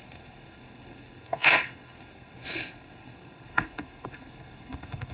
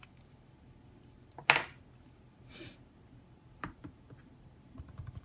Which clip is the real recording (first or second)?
second